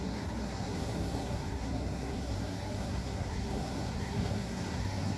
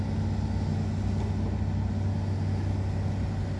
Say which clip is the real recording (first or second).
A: second